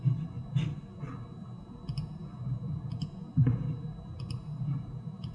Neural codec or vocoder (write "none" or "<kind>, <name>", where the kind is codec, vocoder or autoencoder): none